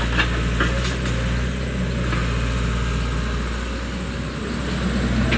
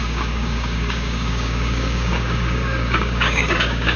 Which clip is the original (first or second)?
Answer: first